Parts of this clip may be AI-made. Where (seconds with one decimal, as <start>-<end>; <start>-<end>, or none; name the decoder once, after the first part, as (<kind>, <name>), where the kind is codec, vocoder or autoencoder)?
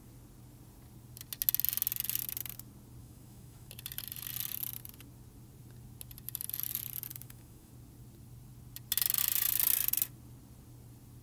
3.0-3.7 (autoencoder, DAC-VAE); 7.1-7.7